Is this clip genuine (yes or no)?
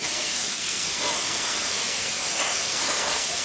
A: no